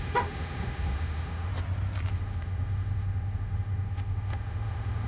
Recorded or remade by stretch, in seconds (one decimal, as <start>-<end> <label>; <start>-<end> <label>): 0.0-1.5 remade; 1.5-2.1 recorded; 2.1-5.1 remade